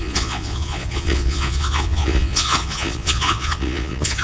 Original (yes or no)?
no